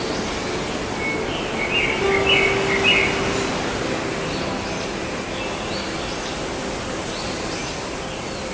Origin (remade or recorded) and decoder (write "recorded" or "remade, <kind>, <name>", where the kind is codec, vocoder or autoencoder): recorded